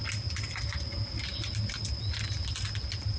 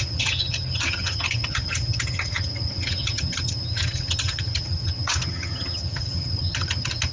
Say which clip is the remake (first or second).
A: second